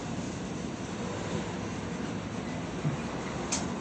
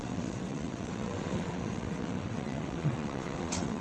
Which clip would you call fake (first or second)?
second